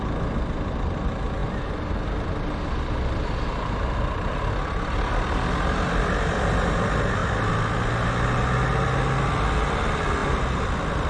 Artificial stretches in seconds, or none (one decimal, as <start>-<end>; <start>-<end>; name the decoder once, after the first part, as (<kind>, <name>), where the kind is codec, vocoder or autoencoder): none